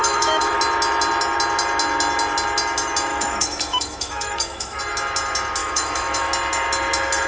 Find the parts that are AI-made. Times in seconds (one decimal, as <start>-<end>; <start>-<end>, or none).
0.0-0.6; 3.1-4.8; 5.6-6.3